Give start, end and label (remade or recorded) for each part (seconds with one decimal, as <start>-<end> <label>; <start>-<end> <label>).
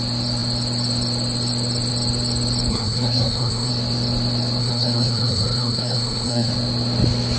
0.0-2.7 recorded; 2.7-3.7 remade; 3.7-4.6 recorded; 4.6-6.5 remade; 6.5-7.4 recorded